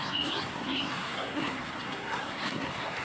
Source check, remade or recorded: remade